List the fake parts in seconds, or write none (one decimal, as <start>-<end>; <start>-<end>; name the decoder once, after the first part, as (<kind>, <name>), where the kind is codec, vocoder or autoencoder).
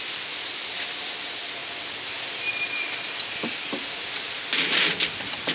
none